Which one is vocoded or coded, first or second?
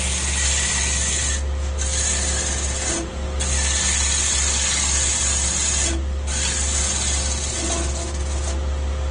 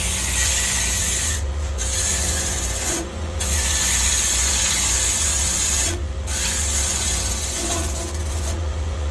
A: second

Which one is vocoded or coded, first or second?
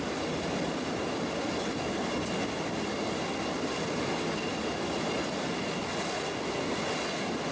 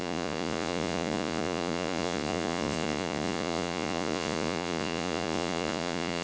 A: second